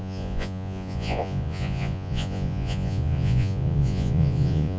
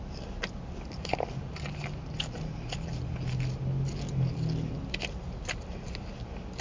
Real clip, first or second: second